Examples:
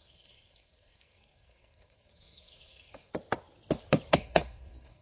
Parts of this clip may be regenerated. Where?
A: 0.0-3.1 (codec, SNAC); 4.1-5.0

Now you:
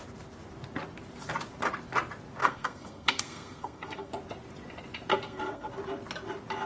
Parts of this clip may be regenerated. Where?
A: 2.4-4.1 (codec, SNAC); 5.1-5.7

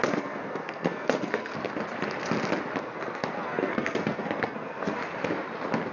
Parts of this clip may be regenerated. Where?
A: 0.0-1.5 (codec, SNAC); 2.8-5.0